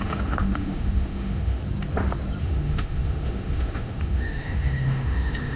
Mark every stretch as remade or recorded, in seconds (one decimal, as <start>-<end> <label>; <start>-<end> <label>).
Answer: 0.0-1.6 remade; 1.6-2.4 recorded; 2.4-5.6 remade